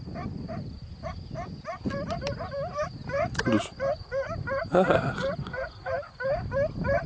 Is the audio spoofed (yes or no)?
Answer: no